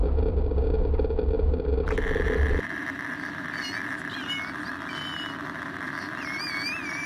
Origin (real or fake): real